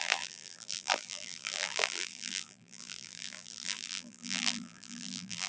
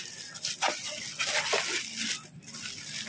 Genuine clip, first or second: second